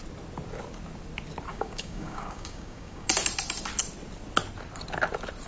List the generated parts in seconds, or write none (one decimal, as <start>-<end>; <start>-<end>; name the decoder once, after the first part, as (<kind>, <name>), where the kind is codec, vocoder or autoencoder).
1.5-3.1 (codec, DAC)